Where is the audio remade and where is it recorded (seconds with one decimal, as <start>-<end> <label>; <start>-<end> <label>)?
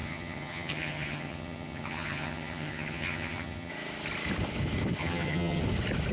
0.0-3.7 remade; 3.7-5.0 recorded; 5.0-5.6 remade; 5.6-6.1 recorded